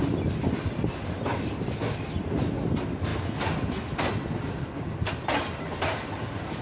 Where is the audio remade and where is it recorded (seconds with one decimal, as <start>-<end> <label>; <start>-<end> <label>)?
0.0-6.6 recorded